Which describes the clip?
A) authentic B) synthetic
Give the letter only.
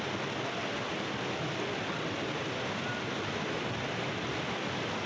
A